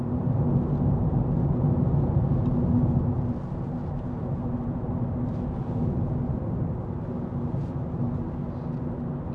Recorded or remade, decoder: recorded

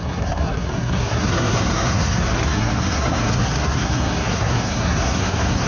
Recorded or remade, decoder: remade, codec, SNAC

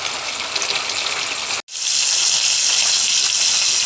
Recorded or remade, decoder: recorded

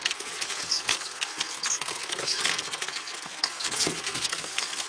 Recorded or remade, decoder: remade, codec, SNAC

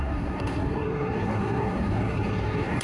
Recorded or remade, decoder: remade, codec, SNAC